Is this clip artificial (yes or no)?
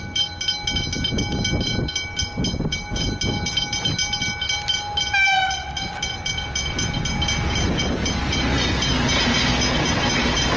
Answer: no